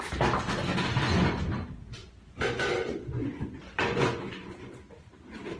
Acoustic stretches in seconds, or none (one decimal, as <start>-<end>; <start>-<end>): 0.0-2.0; 4.7-5.6